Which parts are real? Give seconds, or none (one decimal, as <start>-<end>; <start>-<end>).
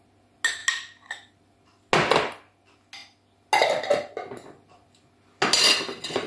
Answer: 0.0-6.3